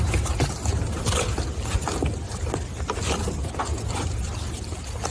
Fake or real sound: real